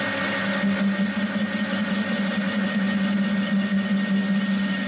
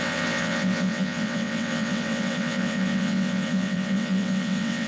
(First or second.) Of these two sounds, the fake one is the second